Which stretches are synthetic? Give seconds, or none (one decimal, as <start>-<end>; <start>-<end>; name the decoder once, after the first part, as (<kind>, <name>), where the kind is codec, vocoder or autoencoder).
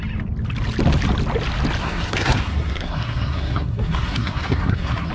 1.8-5.1 (codec, SNAC)